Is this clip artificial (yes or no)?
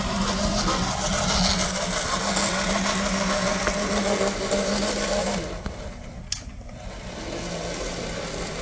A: no